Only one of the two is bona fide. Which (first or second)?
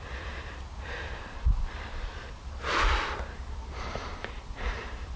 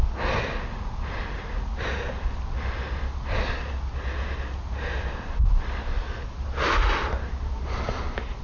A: second